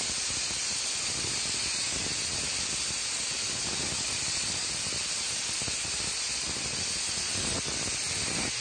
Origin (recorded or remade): recorded